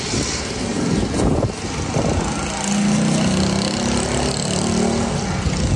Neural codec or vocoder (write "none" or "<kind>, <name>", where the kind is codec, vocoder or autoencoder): none